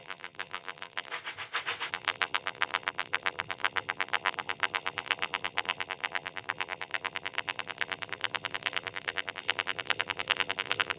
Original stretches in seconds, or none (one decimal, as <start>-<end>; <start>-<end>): 1.1-1.9